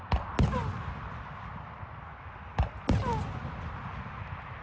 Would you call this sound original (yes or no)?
yes